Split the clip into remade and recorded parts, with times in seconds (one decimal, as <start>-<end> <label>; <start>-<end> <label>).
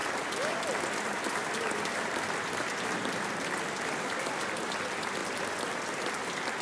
0.0-6.6 recorded